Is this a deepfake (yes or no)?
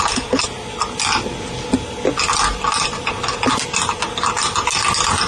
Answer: no